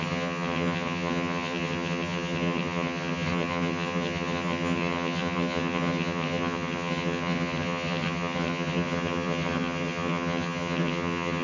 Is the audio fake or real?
fake